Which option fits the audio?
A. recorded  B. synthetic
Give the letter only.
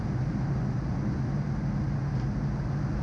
A